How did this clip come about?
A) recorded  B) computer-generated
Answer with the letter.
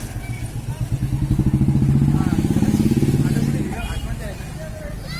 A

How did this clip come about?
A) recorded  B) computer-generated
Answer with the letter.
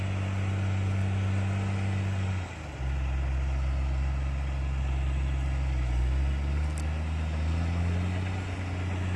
A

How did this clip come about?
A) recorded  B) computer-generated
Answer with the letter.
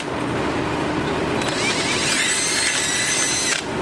A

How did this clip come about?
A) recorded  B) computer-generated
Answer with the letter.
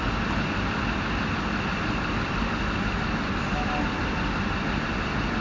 A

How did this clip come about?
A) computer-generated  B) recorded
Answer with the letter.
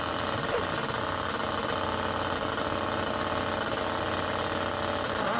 B